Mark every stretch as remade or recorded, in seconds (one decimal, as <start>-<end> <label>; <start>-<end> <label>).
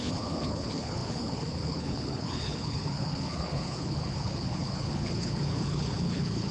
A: 0.0-6.5 remade